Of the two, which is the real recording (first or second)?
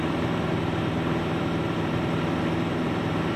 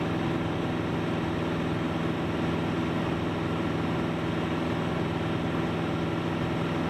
second